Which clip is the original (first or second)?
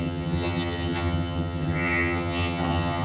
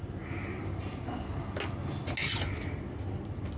second